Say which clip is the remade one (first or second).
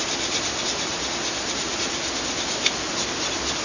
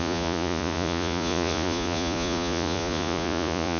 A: second